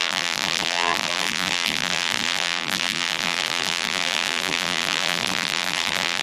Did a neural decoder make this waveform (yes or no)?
yes